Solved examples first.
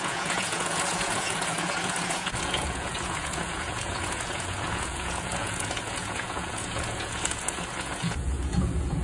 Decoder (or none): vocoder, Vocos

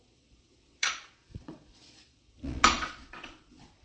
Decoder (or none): vocoder, Vocos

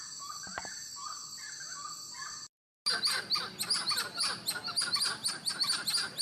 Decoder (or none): none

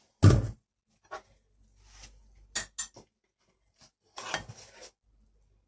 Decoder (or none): none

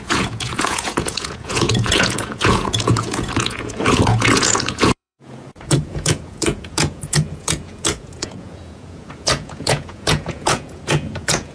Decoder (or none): vocoder, Vocos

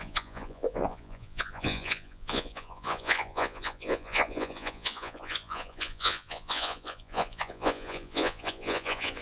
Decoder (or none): vocoder, Vocos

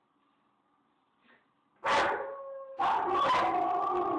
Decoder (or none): none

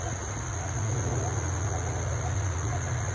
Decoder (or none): vocoder, Vocos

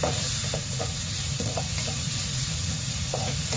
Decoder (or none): vocoder, Vocos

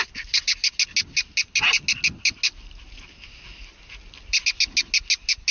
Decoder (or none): none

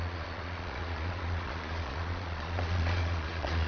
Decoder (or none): vocoder, Vocos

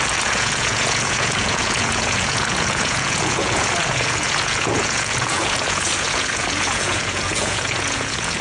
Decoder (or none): vocoder, Vocos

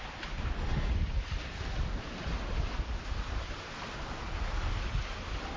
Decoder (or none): none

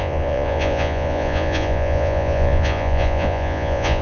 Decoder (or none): vocoder, Vocos